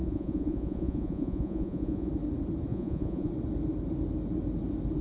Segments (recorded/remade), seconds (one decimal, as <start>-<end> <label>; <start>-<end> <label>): 0.0-2.1 remade; 2.1-2.7 recorded; 2.7-3.3 remade; 3.3-5.0 recorded